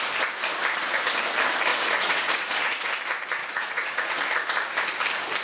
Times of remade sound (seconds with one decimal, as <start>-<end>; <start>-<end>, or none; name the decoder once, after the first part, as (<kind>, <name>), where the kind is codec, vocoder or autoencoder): 1.7-3.0 (vocoder, Vocos); 3.4-4.2